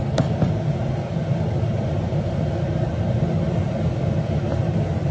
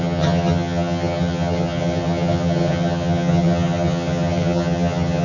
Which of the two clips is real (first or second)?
first